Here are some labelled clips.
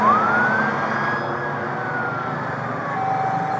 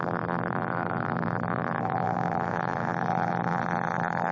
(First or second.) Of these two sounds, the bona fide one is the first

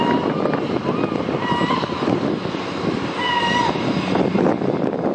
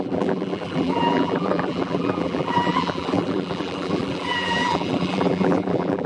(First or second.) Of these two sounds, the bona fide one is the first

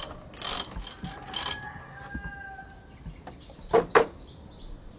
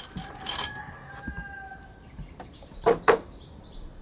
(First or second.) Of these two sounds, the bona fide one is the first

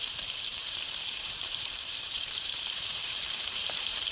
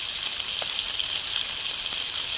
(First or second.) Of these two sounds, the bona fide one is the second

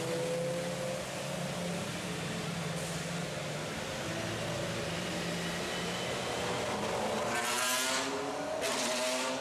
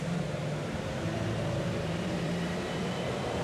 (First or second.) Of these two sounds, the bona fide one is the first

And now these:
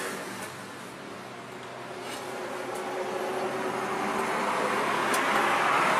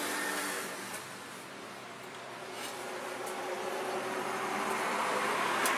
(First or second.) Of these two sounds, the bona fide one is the first